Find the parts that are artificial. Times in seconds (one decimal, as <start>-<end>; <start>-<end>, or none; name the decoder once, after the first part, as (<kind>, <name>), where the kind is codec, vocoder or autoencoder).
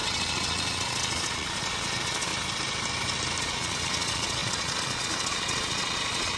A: 0.0-2.3 (vocoder, Vocos); 3.4-6.4